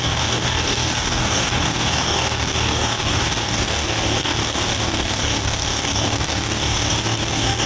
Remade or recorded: remade